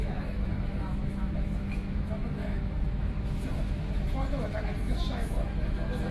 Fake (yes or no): yes